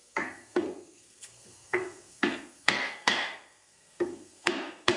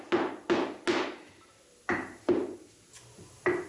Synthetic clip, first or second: first